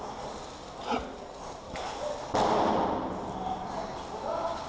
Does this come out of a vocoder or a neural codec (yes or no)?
no